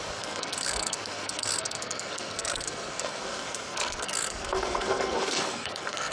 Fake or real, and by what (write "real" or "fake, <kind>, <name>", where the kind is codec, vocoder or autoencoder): fake, codec, SNAC